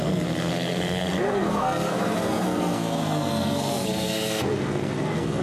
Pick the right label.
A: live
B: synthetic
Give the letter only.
B